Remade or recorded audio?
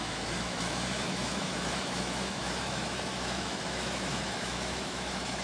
remade